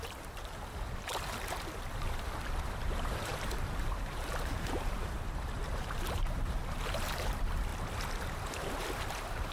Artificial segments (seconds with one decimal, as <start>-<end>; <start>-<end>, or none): 0.0-1.1; 2.6-7.7; 9.1-9.5